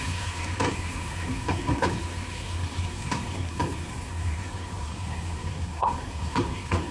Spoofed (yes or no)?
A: yes